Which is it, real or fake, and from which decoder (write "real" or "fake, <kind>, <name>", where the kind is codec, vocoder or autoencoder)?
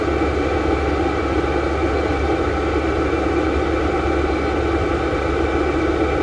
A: real